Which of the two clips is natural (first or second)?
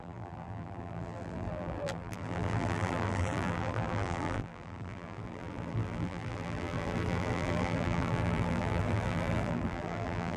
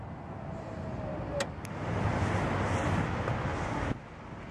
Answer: second